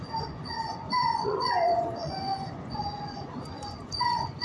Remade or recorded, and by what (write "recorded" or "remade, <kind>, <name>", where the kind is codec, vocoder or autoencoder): remade, vocoder, Vocos